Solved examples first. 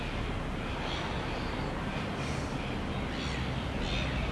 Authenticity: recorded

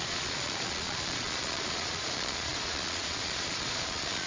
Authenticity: remade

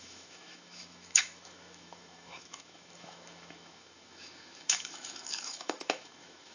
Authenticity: remade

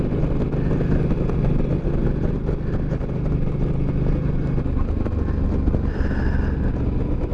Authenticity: recorded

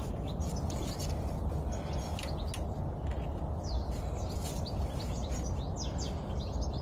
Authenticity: recorded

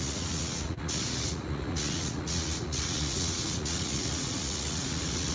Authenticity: remade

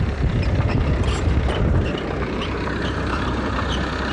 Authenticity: remade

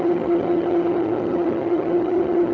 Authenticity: remade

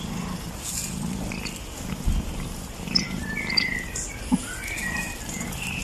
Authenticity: recorded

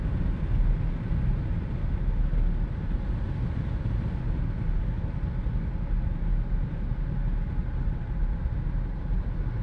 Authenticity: recorded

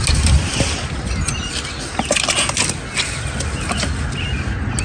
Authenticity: recorded